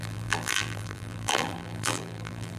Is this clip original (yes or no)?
no